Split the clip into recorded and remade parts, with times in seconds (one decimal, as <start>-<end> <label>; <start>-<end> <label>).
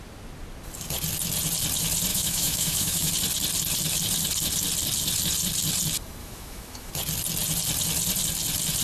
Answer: 0.0-2.1 recorded; 2.1-3.1 remade; 3.1-6.2 recorded; 6.2-6.9 remade; 6.9-8.8 recorded